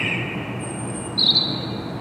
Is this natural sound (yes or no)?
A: yes